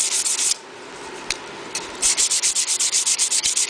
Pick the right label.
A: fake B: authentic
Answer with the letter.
A